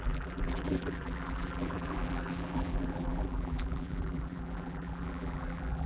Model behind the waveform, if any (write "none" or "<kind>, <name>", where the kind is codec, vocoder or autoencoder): vocoder, BigVGAN v2